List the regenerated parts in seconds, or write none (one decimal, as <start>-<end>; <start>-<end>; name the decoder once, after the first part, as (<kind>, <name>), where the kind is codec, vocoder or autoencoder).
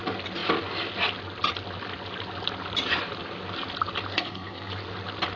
4.1-4.7 (codec, SNAC)